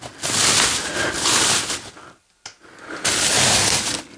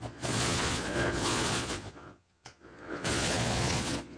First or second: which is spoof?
second